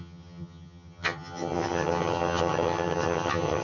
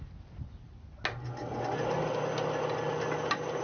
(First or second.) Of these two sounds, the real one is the second